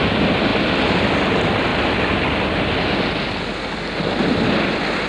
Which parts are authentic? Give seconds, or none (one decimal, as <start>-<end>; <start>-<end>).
0.0-5.1